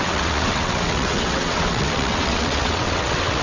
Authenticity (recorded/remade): remade